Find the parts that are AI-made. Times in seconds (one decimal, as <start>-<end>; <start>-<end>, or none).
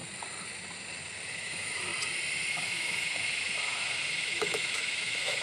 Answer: 1.3-1.9; 2.5-5.4